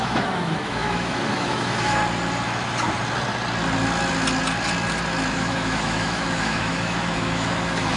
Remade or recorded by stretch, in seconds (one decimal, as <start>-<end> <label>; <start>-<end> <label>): 0.0-2.0 remade; 2.0-5.3 recorded; 5.3-8.0 remade